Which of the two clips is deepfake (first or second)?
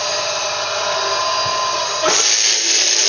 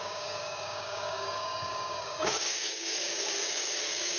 second